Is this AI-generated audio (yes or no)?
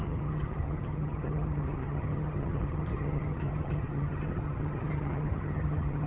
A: yes